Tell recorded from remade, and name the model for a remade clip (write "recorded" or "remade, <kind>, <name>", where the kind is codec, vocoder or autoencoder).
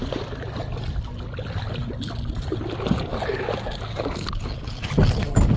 recorded